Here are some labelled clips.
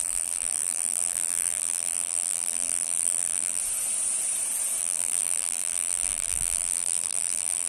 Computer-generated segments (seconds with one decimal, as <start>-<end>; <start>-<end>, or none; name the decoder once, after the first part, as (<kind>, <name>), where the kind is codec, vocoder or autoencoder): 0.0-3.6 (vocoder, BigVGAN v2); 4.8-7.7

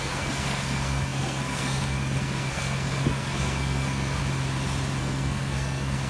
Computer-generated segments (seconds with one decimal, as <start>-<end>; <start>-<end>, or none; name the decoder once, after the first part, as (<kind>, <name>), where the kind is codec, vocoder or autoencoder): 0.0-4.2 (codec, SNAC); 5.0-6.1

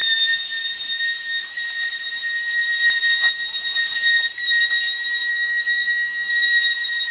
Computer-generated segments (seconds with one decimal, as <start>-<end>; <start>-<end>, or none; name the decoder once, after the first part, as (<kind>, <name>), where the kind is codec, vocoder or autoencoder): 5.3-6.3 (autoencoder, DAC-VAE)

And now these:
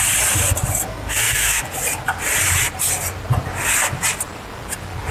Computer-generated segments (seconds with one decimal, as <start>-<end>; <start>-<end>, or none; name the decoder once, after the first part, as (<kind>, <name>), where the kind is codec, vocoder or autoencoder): 0.9-1.6 (codec, SNAC)

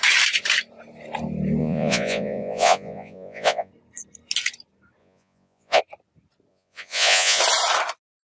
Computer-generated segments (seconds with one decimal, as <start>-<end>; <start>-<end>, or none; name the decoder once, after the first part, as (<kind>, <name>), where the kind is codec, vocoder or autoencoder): 1.6-3.7 (vocoder, Vocos); 5.0-5.8; 6.5-7.4

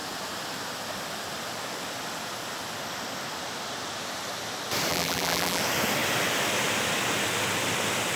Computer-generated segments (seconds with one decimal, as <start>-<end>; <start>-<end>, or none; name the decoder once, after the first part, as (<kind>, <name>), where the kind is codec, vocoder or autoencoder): 4.9-5.6 (vocoder, BigVGAN v2)

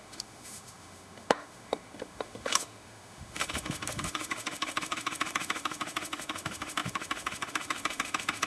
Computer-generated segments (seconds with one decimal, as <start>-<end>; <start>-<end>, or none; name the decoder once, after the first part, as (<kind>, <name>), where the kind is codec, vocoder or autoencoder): 0.0-8.5 (autoencoder, DAC-VAE)

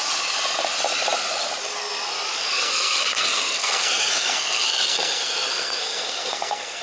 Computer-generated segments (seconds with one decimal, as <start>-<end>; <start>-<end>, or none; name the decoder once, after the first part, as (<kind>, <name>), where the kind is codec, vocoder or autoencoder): 2.4-6.8 (codec, SNAC)